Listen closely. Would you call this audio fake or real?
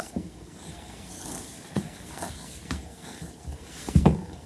fake